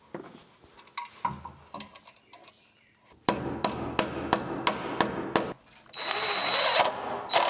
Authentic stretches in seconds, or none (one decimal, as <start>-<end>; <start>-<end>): 0.0-7.5